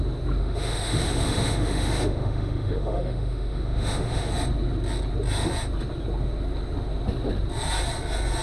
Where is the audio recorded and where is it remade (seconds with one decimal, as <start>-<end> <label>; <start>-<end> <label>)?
0.0-0.4 recorded; 0.4-4.3 remade; 4.3-8.4 recorded